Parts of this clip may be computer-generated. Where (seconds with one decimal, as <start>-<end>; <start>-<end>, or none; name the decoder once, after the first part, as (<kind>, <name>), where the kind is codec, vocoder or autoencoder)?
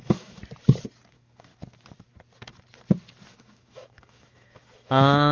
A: 0.0-0.4 (autoencoder, DAC-VAE); 1.1-1.5; 3.3-5.3